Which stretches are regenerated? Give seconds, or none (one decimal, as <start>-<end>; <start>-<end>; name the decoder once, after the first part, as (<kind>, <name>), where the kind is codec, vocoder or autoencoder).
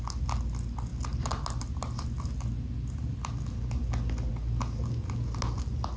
none